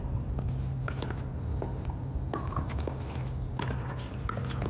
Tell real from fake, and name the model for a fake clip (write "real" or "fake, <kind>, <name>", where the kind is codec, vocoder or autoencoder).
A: real